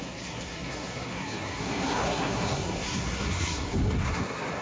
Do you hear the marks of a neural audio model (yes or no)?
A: yes